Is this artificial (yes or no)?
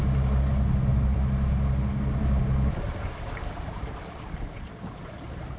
no